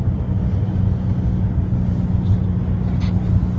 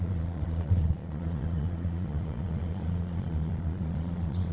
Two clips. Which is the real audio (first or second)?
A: first